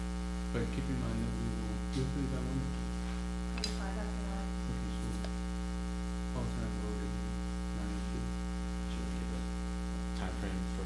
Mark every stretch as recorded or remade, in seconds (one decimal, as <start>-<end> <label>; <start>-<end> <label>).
0.0-10.9 recorded